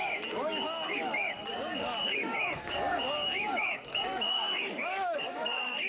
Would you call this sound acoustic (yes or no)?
no